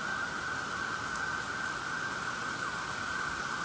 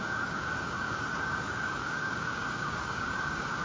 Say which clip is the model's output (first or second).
second